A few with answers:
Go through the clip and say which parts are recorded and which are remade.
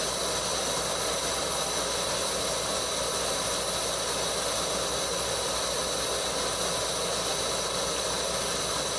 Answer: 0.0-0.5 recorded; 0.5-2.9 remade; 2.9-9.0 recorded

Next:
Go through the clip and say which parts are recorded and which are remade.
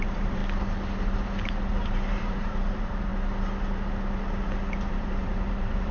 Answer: 0.0-0.4 remade; 0.4-1.7 recorded; 1.7-3.1 remade; 3.1-4.9 recorded; 4.9-5.9 remade